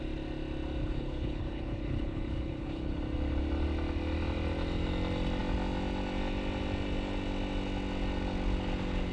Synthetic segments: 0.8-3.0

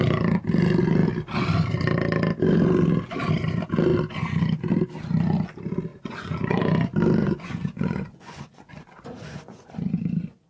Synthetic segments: 5.9-6.6; 7.2-9.9